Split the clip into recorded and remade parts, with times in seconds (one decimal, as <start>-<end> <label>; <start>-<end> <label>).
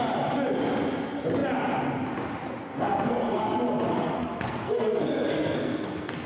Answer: 0.0-2.7 recorded; 2.7-3.4 remade; 3.4-3.9 recorded; 3.9-6.3 remade